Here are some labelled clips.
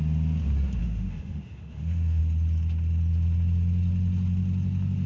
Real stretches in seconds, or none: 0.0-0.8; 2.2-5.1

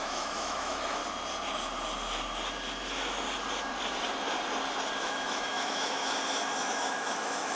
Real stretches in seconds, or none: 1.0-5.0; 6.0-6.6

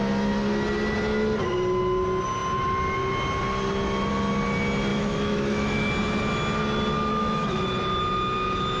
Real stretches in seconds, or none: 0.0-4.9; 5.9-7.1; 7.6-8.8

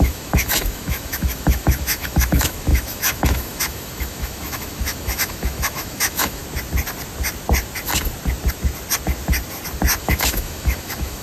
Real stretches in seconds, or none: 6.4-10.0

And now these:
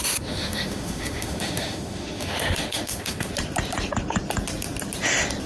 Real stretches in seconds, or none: 3.3-5.5